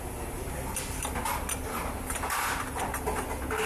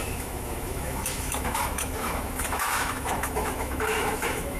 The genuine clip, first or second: first